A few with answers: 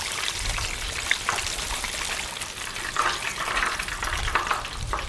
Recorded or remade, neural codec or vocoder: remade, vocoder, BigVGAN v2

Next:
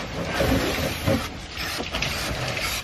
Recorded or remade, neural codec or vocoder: remade, vocoder, BigVGAN v2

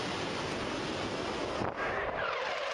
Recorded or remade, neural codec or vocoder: recorded